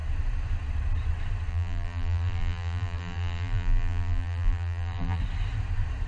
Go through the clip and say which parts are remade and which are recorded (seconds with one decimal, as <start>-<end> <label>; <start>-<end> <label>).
0.0-1.5 recorded; 1.5-5.2 remade; 5.2-6.1 recorded